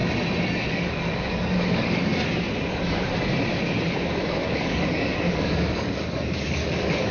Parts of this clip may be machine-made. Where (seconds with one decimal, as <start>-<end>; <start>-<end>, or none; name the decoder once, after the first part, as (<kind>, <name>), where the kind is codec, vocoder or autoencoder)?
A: 0.7-2.1 (codec, DAC); 2.7-3.1; 4.3-7.1